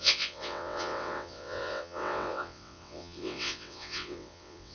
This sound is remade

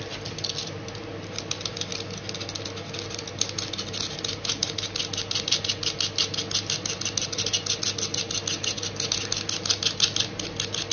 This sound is recorded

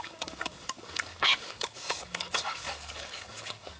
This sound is remade